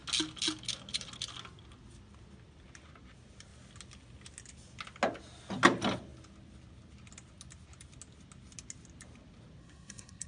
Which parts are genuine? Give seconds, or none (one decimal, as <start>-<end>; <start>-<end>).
0.0-9.6